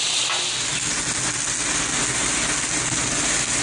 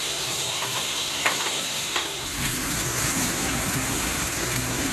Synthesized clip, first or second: second